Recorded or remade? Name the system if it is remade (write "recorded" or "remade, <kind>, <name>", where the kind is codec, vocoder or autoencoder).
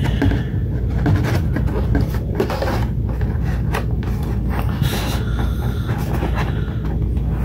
recorded